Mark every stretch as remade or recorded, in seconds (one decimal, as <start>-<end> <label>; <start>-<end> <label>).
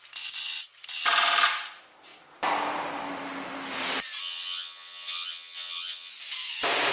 0.0-4.2 recorded; 4.2-6.1 remade; 6.1-6.9 recorded